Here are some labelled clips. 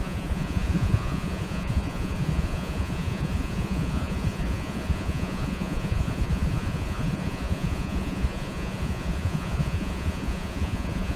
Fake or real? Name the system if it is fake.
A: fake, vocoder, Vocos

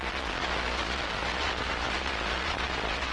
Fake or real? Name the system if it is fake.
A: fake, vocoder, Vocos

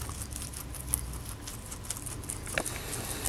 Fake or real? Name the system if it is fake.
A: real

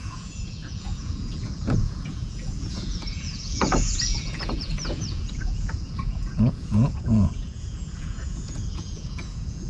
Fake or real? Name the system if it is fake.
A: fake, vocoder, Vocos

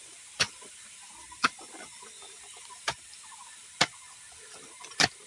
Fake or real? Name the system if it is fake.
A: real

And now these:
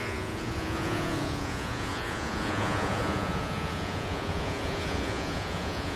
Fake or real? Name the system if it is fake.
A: fake, vocoder, Vocos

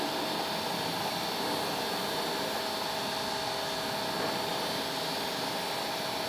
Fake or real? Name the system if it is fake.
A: real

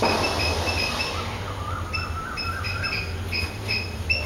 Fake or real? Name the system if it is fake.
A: real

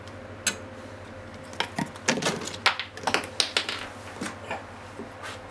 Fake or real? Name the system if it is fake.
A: real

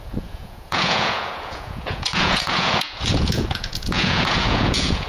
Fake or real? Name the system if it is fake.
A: fake, vocoder, Vocos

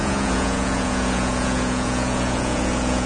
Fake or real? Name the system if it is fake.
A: fake, vocoder, Vocos